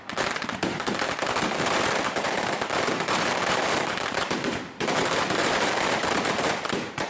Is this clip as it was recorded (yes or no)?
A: no